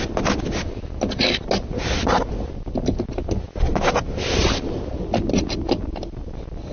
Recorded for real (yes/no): yes